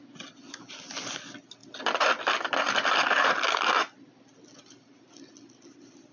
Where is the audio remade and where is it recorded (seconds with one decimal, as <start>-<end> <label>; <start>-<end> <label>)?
0.0-6.1 recorded